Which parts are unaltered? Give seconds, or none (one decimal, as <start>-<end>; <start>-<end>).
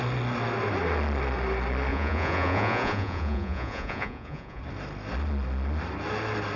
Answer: 0.0-1.9; 4.6-6.6